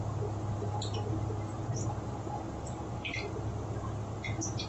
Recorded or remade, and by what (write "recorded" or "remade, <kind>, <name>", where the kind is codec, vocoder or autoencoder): recorded